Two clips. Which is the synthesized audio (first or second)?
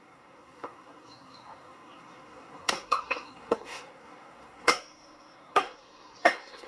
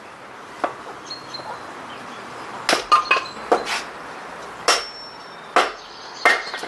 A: first